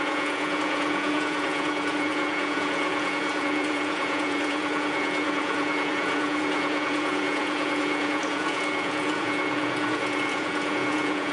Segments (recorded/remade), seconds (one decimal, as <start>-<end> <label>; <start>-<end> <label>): 0.0-11.3 remade